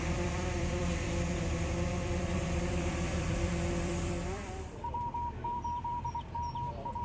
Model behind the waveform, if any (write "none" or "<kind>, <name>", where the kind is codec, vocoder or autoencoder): vocoder, BigVGAN v2